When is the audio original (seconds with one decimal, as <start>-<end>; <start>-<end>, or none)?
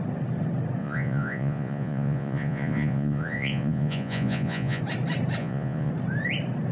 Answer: 0.0-0.8; 4.8-5.4; 5.9-6.7